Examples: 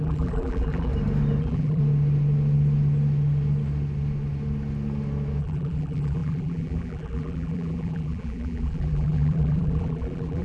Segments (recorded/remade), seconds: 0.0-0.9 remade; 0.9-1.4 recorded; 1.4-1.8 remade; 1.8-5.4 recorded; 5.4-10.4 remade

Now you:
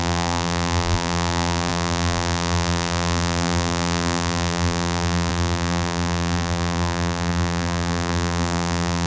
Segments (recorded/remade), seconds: 0.0-9.1 remade

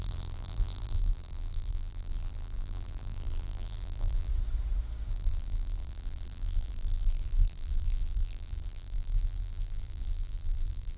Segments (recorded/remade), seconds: 0.0-4.3 remade; 4.3-5.1 recorded; 5.1-11.0 remade